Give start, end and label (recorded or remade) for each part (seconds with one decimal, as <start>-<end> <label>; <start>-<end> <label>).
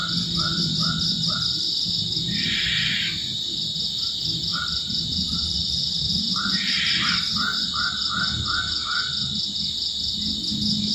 0.0-4.5 recorded; 4.5-6.8 remade; 6.8-10.9 recorded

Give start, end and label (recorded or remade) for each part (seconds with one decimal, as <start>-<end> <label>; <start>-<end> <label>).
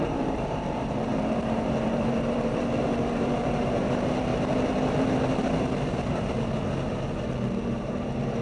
0.0-4.3 remade; 4.3-7.6 recorded; 7.6-8.4 remade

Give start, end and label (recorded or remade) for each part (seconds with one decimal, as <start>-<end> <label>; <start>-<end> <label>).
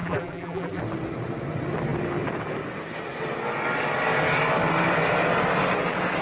0.0-0.8 remade; 0.8-6.2 recorded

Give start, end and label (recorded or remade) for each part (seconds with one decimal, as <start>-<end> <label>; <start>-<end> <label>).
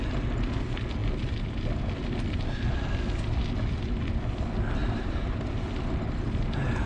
0.0-4.8 recorded; 4.8-5.6 remade; 5.6-6.9 recorded